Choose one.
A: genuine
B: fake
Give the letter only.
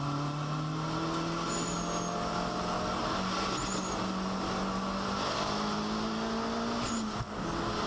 A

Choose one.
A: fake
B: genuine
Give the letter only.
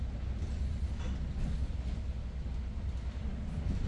B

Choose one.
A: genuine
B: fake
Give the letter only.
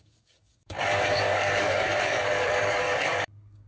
B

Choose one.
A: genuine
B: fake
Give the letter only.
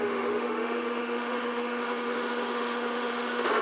B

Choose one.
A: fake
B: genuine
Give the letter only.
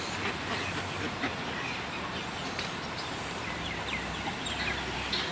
A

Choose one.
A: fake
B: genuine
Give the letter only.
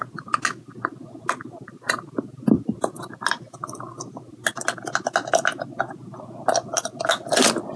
B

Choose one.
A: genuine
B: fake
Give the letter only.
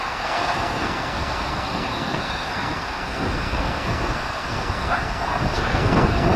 B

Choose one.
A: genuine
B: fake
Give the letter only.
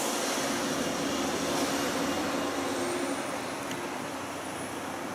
A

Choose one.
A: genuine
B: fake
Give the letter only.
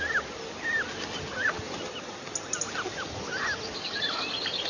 A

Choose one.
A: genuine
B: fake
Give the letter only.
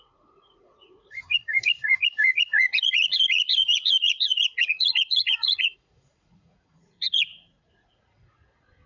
B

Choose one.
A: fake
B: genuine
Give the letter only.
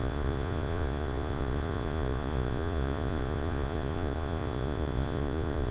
A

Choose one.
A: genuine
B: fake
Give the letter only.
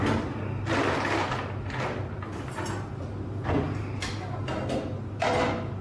A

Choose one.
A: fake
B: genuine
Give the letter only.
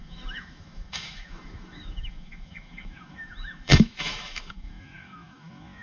A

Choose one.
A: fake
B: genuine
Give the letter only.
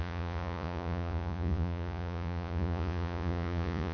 A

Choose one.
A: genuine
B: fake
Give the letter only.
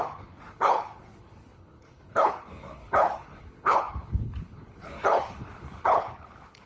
B